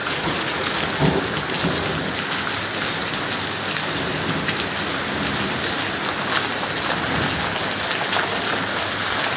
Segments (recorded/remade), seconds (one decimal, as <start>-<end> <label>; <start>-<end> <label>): 0.0-0.8 remade; 0.8-9.4 recorded